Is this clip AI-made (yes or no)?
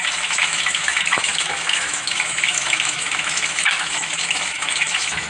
yes